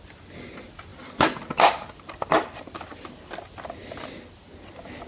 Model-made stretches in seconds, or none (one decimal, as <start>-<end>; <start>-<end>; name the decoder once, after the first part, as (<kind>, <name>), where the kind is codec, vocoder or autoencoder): none